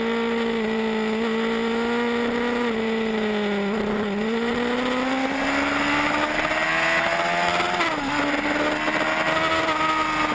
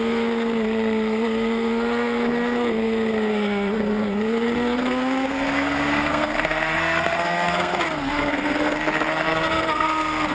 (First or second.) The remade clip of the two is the second